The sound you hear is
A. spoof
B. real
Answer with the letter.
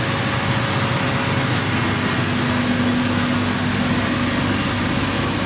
B